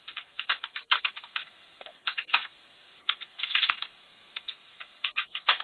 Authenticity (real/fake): fake